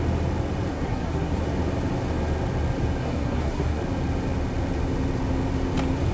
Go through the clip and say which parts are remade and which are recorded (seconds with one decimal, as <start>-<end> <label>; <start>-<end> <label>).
0.0-0.7 recorded; 0.7-1.4 remade; 1.4-3.0 recorded; 3.0-3.8 remade; 3.8-6.1 recorded